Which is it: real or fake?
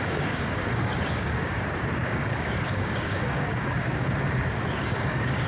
fake